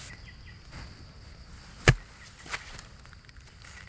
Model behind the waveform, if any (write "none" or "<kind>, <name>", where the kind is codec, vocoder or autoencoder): none